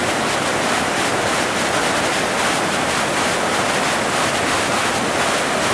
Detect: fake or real real